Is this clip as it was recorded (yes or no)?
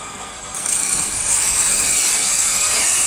no